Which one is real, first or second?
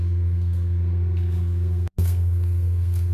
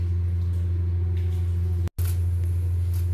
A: second